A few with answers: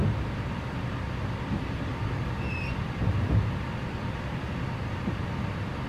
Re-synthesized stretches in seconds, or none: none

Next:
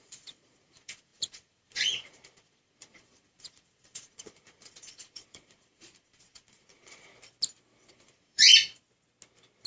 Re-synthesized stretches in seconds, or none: 0.0-7.1; 7.9-8.5

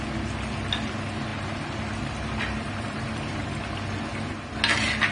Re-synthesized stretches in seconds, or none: 1.3-4.0

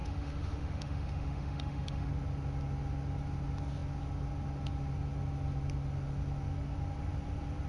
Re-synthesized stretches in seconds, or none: 0.0-2.1

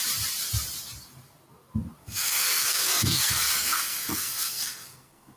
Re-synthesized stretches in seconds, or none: 2.0-5.4

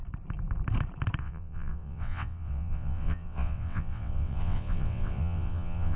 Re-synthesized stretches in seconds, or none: 1.2-6.0